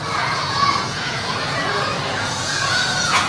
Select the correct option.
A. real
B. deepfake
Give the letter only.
B